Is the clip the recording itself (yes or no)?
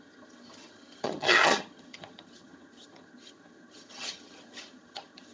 no